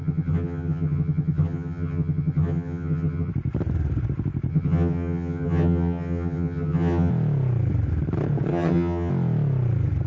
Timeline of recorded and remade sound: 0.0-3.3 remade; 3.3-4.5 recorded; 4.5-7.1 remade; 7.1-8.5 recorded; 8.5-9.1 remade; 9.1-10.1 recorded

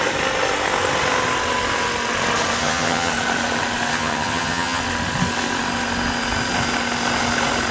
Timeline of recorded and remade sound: 0.0-2.6 recorded; 2.6-3.1 remade; 3.1-3.9 recorded; 3.9-4.8 remade; 4.8-7.7 recorded